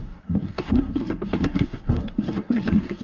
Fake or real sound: fake